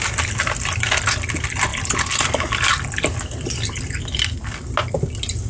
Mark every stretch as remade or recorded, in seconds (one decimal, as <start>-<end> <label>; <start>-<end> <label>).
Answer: 0.0-5.5 recorded